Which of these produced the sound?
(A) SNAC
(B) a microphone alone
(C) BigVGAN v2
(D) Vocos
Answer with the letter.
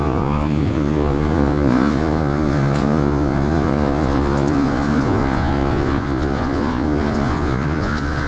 D